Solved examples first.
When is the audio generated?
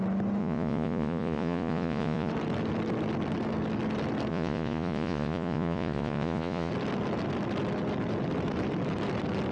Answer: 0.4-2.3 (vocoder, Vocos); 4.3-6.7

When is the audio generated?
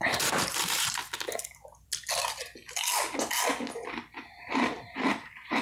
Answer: 0.0-1.0 (vocoder, BigVGAN v2); 4.4-5.6